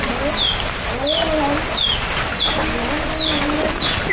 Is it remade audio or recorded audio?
recorded